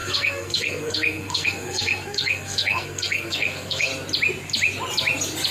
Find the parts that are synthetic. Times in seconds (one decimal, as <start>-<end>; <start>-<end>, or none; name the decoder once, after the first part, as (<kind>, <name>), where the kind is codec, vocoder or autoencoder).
0.0-3.9 (codec, SNAC)

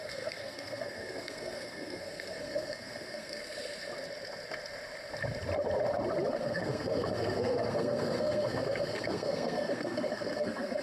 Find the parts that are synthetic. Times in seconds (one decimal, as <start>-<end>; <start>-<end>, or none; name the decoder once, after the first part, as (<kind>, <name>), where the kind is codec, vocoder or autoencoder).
0.0-3.4 (codec, SNAC); 6.3-10.8

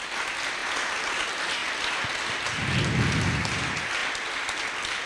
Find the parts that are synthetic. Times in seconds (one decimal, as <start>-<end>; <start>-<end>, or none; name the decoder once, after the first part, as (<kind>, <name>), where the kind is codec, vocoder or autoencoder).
none

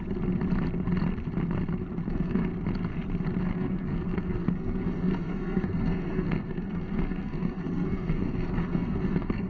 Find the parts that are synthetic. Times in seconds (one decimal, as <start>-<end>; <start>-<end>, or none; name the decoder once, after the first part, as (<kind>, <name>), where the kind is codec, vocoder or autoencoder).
2.1-2.5 (codec, SNAC); 3.4-9.5

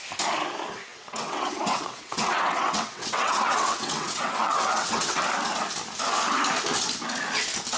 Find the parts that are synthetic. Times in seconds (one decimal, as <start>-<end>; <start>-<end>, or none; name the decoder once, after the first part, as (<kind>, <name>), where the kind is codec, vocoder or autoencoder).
0.9-5.2 (vocoder, WaveNeXt)

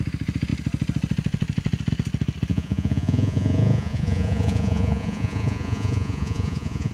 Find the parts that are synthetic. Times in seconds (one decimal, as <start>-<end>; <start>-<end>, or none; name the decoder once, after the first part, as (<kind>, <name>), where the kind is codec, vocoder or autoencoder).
2.5-6.9 (vocoder, Vocos)

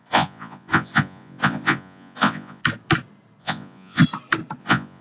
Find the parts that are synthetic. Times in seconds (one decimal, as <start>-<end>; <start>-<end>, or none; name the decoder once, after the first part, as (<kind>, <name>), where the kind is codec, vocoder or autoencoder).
0.0-2.6 (vocoder, Vocos); 3.4-4.0; 4.6-5.0